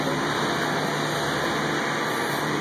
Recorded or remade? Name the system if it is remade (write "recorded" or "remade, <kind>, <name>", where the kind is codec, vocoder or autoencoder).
recorded